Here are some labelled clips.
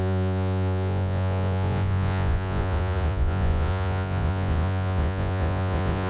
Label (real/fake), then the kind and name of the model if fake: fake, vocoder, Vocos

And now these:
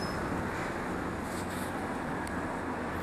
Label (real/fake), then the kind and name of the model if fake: real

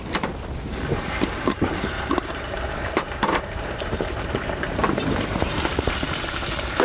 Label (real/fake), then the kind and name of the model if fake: fake, vocoder, BigVGAN v2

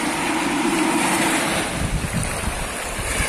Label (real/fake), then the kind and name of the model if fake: real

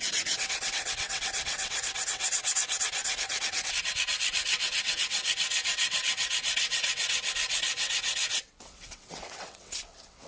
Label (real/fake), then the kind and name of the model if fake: fake, vocoder, WaveNeXt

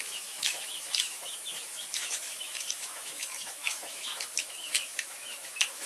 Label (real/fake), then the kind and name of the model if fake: fake, autoencoder, DAC-VAE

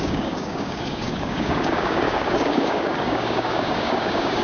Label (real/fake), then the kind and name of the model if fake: fake, codec, DAC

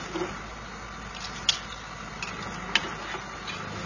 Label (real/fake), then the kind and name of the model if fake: real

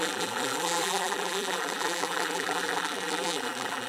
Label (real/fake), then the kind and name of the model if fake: fake, vocoder, BigVGAN v2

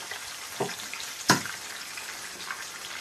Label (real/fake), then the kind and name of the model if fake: real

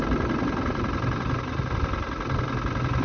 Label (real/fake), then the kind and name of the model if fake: real